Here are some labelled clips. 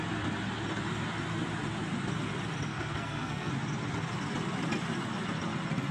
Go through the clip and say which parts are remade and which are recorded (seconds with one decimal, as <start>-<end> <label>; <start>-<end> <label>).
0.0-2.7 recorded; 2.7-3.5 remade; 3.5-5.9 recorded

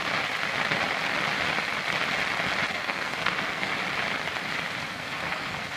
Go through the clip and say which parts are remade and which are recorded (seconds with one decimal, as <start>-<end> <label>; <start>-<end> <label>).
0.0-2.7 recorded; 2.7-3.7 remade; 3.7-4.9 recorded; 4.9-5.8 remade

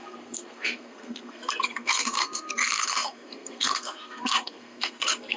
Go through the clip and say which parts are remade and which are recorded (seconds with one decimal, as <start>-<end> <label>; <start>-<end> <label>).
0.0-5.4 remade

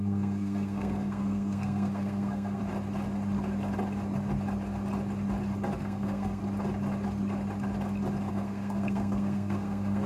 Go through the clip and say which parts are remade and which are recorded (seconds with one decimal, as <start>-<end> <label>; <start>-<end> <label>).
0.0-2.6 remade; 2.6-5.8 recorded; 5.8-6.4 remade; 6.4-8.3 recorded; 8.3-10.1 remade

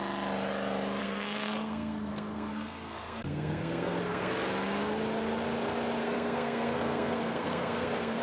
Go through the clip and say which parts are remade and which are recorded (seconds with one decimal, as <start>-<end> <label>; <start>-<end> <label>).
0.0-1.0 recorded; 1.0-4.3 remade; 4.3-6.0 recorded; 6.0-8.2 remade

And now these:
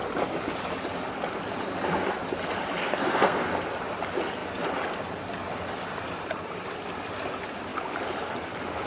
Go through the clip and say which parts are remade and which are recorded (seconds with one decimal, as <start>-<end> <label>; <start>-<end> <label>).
0.0-2.8 recorded; 2.8-3.5 remade; 3.5-8.9 recorded

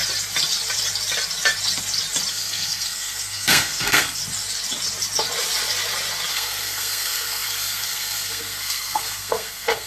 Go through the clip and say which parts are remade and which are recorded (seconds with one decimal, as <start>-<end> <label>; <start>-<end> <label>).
0.0-2.3 recorded; 2.3-4.2 remade; 4.2-6.3 recorded; 6.3-9.9 remade

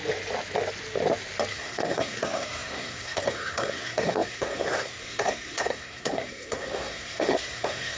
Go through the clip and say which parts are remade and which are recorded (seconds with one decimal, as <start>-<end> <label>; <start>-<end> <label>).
0.0-1.5 recorded; 1.5-8.0 remade